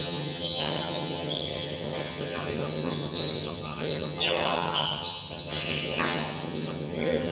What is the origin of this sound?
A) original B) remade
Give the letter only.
B